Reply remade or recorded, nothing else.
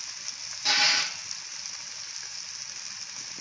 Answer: recorded